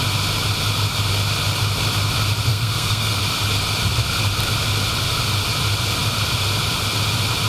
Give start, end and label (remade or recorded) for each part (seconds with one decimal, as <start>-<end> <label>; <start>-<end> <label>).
0.0-2.5 recorded; 2.5-3.2 remade; 3.2-7.5 recorded